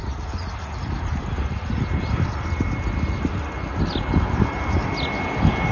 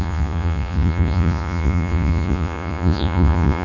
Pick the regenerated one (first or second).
second